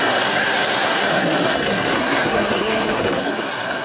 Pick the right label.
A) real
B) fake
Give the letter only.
B